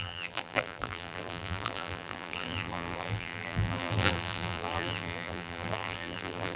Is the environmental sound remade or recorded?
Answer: remade